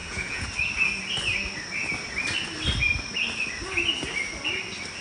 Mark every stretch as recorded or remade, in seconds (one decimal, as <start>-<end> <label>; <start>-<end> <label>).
0.0-0.5 remade; 0.5-5.0 recorded